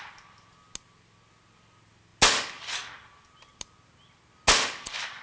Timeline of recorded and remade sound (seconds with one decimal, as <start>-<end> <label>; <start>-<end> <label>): 0.0-5.2 recorded